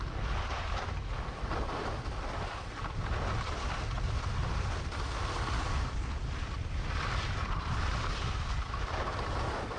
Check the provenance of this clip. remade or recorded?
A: recorded